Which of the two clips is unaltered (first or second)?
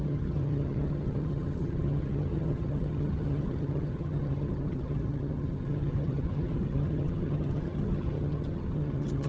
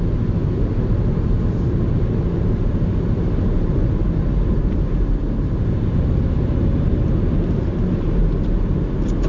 second